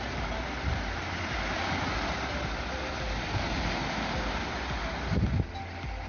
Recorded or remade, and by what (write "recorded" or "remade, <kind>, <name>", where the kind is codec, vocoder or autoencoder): recorded